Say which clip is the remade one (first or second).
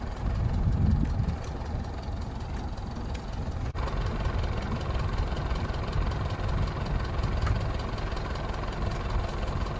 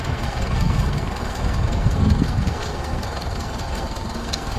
second